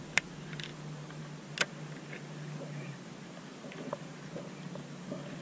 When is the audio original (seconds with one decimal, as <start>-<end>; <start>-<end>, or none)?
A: 0.0-5.4

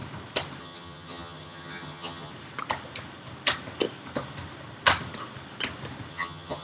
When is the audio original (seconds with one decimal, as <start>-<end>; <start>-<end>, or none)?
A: 0.0-0.6; 2.3-6.1